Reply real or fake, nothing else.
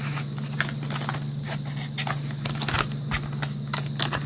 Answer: real